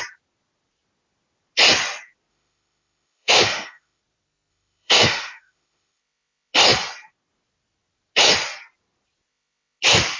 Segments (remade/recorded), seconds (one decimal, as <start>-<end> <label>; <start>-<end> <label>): 0.0-2.3 recorded; 2.3-4.0 remade; 4.0-4.5 recorded; 4.5-6.0 remade; 6.0-10.2 recorded